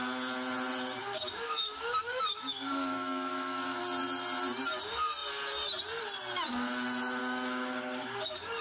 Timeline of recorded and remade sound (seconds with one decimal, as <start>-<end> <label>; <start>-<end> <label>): 0.0-1.0 recorded; 1.0-3.8 remade; 3.8-7.2 recorded; 7.2-8.6 remade